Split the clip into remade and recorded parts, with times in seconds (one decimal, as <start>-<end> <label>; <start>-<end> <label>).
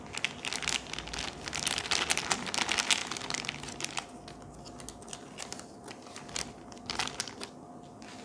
0.0-8.2 recorded